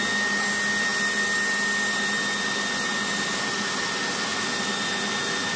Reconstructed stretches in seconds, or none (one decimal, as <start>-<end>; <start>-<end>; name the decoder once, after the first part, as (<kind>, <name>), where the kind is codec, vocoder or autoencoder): none

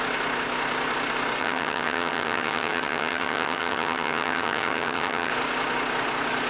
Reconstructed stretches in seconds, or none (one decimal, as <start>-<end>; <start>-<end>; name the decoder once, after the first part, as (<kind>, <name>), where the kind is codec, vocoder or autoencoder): 1.4-5.3 (vocoder, HiFi-GAN)

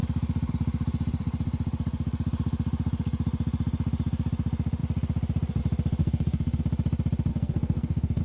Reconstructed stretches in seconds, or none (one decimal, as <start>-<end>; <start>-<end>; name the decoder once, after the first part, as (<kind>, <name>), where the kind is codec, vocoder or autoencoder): 6.0-6.6 (codec, SNAC); 7.3-8.2

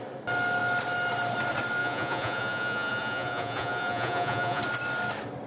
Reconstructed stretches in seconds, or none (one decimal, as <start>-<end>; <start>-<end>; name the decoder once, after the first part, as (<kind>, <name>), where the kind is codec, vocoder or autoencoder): 1.8-4.6 (vocoder, Vocos)

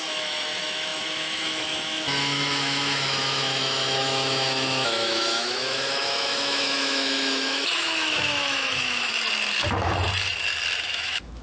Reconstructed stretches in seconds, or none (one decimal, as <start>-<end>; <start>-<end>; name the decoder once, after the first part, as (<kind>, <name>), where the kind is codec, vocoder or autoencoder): 0.0-9.1 (autoencoder, DAC-VAE); 10.9-11.4

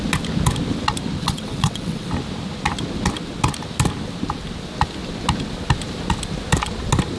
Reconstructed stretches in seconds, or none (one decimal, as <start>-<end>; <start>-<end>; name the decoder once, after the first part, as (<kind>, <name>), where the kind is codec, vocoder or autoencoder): 1.2-2.1 (vocoder, WaveNeXt)

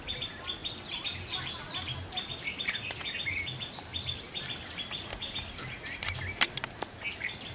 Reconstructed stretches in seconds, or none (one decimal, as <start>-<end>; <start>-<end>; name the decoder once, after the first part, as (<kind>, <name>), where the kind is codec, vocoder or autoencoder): 3.9-6.9 (vocoder, BigVGAN v2)

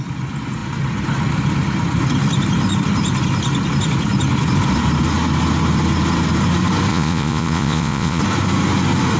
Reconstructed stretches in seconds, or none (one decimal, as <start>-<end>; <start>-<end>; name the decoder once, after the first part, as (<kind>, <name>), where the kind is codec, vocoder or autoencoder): 6.9-8.2 (vocoder, Vocos)